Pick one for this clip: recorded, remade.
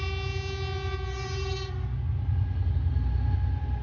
recorded